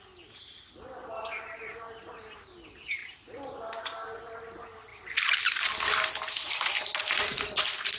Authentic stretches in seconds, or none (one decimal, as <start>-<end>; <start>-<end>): 0.0-8.0